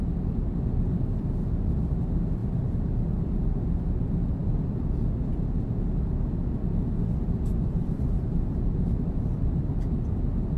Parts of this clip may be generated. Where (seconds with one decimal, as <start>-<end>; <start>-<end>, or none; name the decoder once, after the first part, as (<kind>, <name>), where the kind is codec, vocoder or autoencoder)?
7.5-9.6 (vocoder, BigVGAN v2)